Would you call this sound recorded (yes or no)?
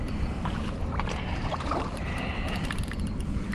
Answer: no